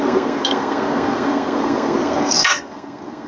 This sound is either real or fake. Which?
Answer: fake